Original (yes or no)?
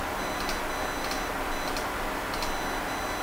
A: yes